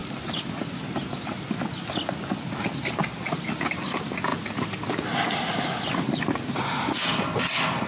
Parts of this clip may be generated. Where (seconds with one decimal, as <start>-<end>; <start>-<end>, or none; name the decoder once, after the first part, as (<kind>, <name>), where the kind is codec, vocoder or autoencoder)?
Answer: none